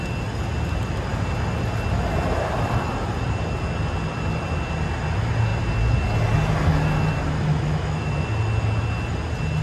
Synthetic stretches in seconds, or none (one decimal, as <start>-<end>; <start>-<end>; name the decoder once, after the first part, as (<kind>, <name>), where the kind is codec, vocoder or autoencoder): 7.5-8.1 (autoencoder, DAC-VAE)